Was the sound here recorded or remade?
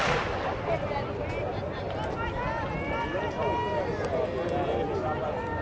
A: recorded